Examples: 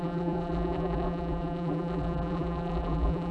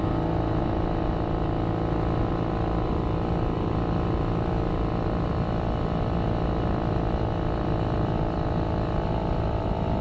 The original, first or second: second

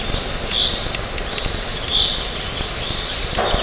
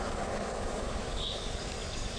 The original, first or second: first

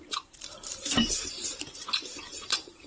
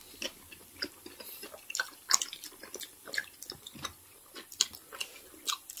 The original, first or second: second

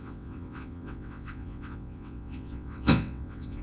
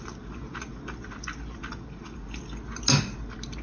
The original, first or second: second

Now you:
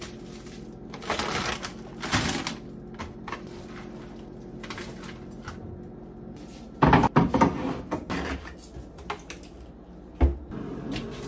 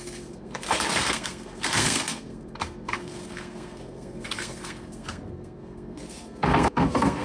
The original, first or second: first